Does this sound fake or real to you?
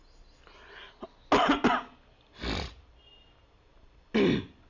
real